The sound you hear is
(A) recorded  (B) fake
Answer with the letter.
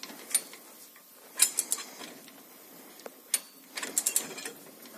A